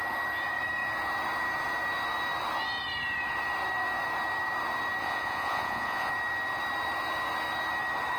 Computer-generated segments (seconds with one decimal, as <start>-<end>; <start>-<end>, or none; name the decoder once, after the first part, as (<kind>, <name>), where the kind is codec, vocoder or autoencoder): 5.0-6.1 (vocoder, Vocos)